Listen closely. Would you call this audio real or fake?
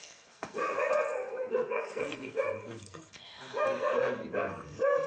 fake